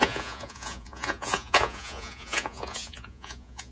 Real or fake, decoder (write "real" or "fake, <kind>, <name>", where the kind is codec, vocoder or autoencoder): fake, vocoder, Vocos